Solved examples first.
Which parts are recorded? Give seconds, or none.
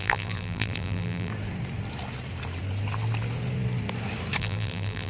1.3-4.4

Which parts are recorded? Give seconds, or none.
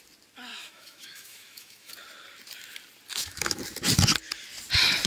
0.0-0.5; 1.9-3.1; 3.6-5.1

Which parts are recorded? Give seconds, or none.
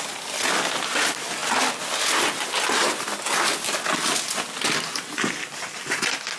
0.0-6.4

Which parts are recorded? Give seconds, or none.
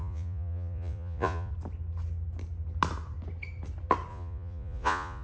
1.5-4.1